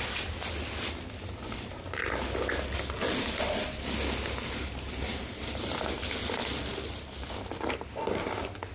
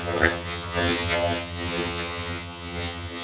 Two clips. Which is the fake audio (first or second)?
second